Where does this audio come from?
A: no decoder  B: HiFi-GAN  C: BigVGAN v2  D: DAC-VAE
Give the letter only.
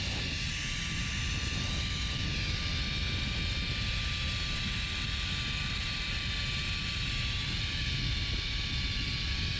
A